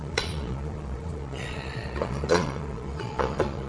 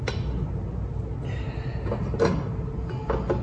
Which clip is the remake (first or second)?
first